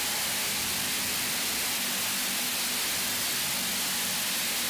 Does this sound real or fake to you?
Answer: real